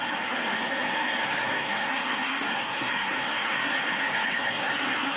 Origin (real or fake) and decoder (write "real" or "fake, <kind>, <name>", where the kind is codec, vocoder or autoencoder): fake, codec, SNAC